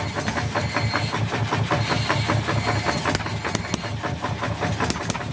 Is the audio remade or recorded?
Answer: recorded